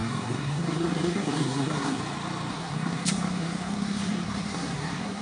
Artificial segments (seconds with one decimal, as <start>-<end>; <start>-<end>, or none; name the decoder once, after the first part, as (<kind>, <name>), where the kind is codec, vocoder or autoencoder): 0.0-2.0 (codec, SNAC); 2.5-5.2